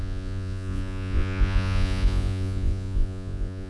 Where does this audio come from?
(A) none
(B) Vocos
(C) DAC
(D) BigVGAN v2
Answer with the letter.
B